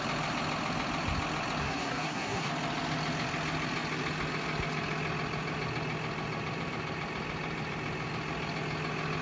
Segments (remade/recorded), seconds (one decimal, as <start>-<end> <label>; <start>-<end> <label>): 0.0-1.6 recorded; 1.6-2.5 remade; 2.5-9.2 recorded